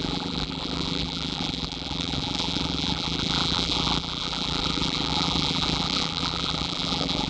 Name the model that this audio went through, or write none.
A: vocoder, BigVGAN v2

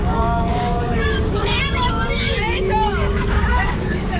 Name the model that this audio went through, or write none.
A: codec, DAC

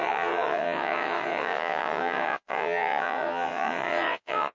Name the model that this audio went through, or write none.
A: vocoder, WaveNeXt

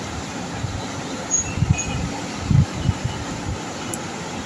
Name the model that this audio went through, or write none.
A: vocoder, BigVGAN v2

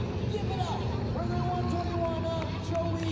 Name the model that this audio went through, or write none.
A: none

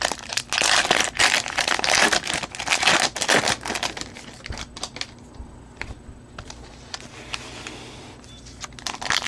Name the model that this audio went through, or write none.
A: none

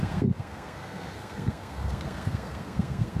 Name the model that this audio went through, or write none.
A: codec, SNAC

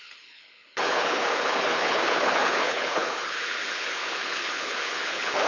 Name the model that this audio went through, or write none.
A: codec, HILCodec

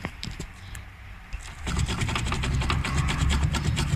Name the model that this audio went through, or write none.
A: vocoder, BigVGAN v2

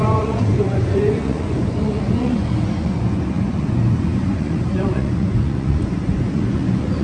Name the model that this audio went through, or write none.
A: vocoder, Vocos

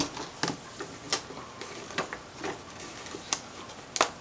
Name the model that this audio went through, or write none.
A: none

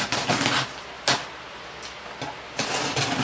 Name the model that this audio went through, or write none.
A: none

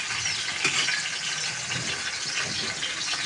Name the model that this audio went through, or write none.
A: none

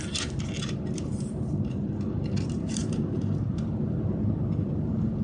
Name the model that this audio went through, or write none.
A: vocoder, BigVGAN v2